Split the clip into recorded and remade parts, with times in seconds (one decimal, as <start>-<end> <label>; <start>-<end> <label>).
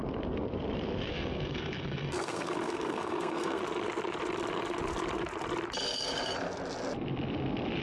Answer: 0.0-1.1 recorded; 1.1-3.6 remade; 3.6-7.8 recorded